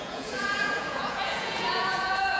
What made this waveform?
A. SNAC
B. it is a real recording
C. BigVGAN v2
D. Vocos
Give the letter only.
D